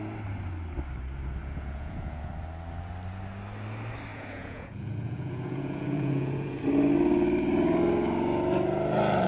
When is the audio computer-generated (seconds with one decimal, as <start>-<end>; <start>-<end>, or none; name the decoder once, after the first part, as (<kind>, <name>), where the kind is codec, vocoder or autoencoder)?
1.4-2.3 (vocoder, Vocos); 4.1-6.6